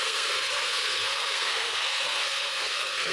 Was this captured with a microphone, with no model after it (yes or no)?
no